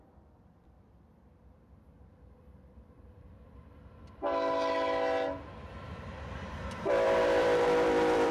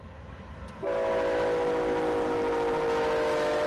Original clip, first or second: second